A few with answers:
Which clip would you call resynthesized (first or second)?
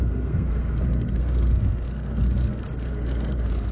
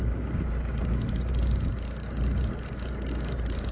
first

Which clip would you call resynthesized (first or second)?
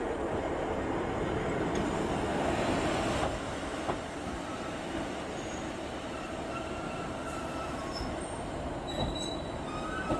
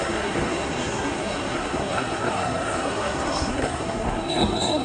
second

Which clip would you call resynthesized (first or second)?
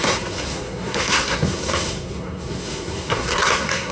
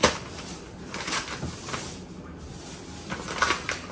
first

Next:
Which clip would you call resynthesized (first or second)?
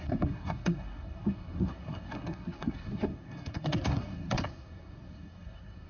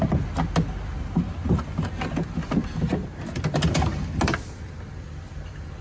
first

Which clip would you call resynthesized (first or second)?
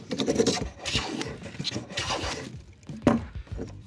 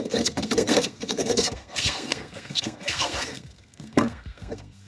second